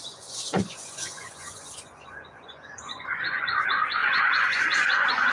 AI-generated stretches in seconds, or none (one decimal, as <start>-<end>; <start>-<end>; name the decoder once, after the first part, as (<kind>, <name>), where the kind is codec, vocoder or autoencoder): 0.0-5.3 (vocoder, Vocos)